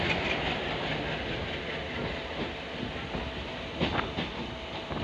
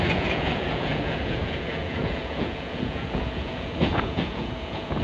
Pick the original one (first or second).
first